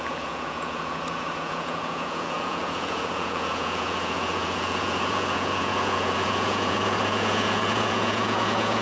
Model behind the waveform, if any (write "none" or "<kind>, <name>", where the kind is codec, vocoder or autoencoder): vocoder, Vocos